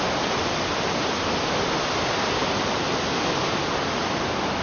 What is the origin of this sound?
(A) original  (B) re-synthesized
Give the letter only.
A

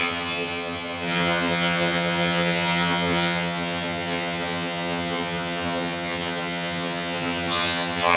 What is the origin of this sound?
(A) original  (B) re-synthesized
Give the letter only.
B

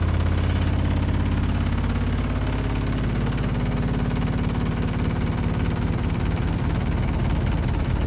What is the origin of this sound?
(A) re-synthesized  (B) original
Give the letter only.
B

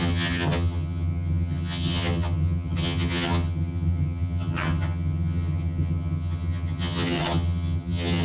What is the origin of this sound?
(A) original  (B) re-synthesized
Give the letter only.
B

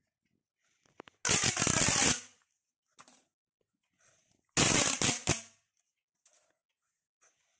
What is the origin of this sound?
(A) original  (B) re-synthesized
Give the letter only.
A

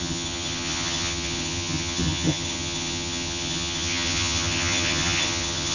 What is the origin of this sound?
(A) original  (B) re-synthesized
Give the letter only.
B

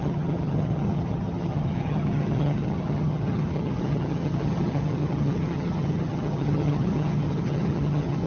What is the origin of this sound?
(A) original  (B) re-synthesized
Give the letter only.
B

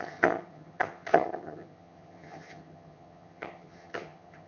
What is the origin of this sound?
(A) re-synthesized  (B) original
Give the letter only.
A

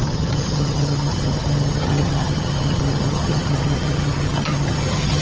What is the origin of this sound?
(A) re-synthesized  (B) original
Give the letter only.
A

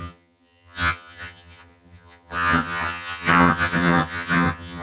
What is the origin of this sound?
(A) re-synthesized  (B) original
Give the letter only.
A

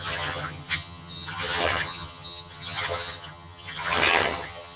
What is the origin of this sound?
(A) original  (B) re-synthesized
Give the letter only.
B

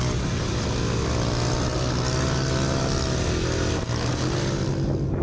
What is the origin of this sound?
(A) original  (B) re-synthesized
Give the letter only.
A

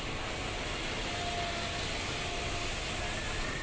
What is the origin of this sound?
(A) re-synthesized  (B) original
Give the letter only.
B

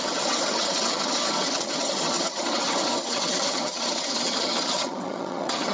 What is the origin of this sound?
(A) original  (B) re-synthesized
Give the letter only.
B